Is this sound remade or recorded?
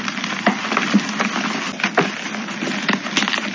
recorded